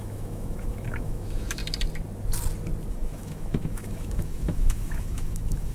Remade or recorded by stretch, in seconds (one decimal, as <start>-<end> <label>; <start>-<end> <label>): 0.0-1.6 remade; 1.6-2.9 recorded; 2.9-5.7 remade